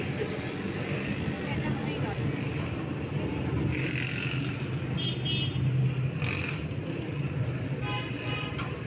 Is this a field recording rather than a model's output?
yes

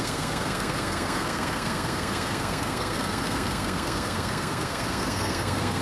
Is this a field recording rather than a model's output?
no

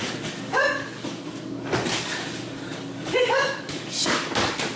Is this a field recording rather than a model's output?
no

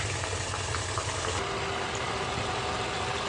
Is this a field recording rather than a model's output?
yes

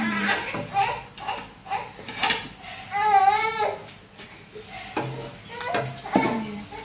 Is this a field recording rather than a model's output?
yes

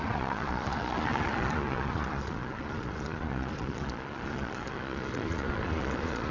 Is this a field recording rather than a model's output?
no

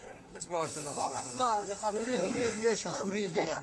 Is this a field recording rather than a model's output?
no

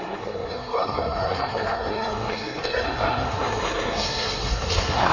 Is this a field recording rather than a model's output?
no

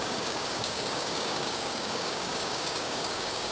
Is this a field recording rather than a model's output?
no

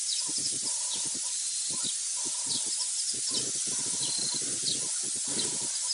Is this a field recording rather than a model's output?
yes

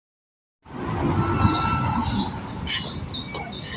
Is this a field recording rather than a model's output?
yes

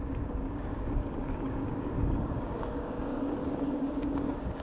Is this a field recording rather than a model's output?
no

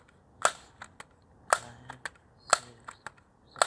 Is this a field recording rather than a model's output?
yes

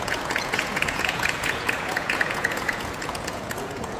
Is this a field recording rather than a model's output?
no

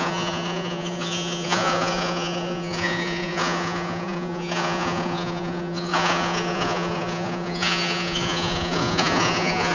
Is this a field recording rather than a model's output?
no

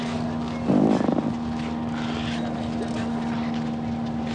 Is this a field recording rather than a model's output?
yes